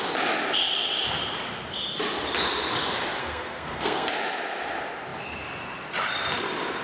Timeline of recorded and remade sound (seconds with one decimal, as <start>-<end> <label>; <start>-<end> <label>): 0.0-3.2 recorded; 3.2-4.1 remade; 4.1-6.8 recorded